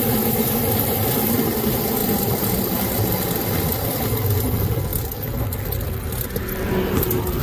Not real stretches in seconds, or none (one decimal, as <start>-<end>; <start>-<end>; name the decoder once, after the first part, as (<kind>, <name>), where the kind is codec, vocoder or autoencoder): none